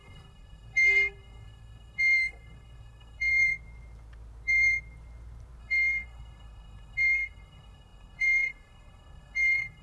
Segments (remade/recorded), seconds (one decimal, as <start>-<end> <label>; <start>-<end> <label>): 0.0-3.3 remade; 3.3-5.6 recorded; 5.6-9.8 remade